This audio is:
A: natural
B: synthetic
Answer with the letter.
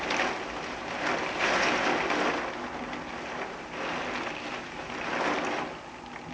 A